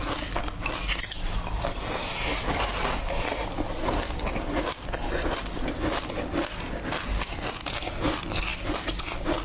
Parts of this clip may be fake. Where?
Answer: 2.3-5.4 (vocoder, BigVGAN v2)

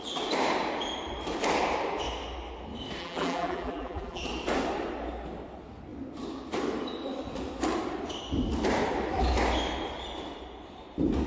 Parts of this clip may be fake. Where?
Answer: 3.0-4.2 (vocoder, BigVGAN v2)

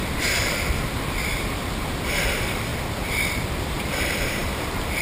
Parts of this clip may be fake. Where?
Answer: 0.0-2.7 (vocoder, BigVGAN v2); 3.5-5.0

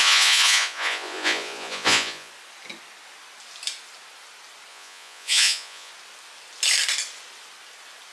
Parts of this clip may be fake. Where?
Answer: 0.0-2.3 (vocoder, Vocos); 4.7-5.9